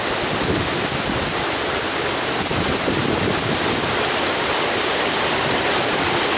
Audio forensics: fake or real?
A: real